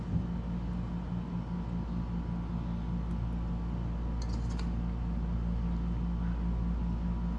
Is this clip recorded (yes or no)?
yes